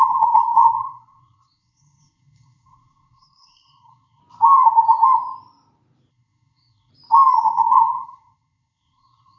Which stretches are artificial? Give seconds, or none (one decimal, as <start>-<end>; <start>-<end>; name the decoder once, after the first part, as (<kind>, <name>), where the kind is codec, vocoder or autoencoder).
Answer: 0.0-4.2 (codec, SNAC); 6.1-6.9; 7.4-9.4